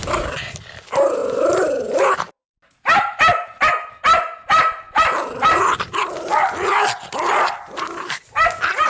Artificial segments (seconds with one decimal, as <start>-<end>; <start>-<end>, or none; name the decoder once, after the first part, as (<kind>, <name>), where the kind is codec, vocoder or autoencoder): none

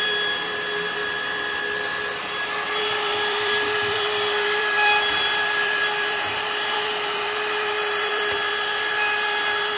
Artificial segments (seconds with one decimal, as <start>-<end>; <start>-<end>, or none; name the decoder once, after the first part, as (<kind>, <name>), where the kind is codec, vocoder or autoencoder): 0.0-9.8 (vocoder, BigVGAN v2)

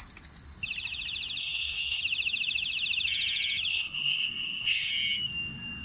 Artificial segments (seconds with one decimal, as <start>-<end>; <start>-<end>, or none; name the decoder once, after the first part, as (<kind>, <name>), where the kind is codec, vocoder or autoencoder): 1.4-2.0 (codec, SNAC); 3.7-4.9

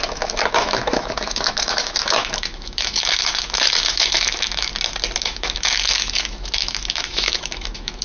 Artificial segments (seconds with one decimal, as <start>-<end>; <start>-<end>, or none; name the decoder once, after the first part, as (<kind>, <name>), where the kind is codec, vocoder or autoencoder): 0.0-4.7 (autoencoder, DAC-VAE); 5.2-8.0

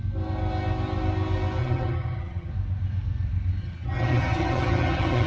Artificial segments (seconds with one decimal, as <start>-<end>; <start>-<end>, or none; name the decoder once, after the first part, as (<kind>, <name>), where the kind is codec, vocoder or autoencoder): 1.6-2.5 (vocoder, HiFi-GAN); 3.6-5.3

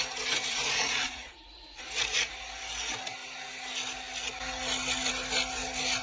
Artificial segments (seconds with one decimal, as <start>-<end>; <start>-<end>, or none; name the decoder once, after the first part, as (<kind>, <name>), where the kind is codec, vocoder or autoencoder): 0.5-1.8 (vocoder, Vocos)